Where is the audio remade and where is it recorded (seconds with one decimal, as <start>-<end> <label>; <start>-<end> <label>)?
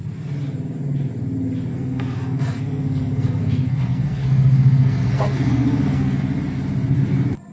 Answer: 0.0-1.7 recorded; 1.7-6.2 remade; 6.2-7.5 recorded